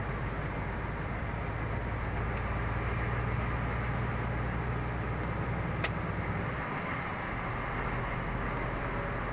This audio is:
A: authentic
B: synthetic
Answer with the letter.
A